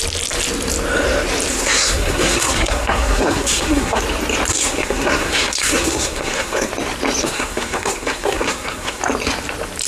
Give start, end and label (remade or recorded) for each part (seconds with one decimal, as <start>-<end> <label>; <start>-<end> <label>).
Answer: 0.0-1.5 recorded; 1.5-4.0 remade; 4.0-4.5 recorded; 4.5-6.7 remade; 6.7-7.2 recorded; 7.2-9.0 remade; 9.0-9.9 recorded